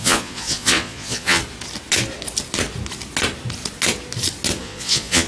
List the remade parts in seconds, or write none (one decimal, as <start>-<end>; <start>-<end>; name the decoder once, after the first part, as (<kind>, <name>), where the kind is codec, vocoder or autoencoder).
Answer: 0.0-1.4 (vocoder, Vocos); 4.6-5.3